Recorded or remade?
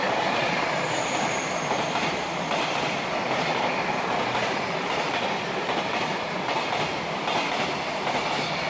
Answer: remade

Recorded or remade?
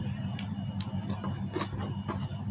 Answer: recorded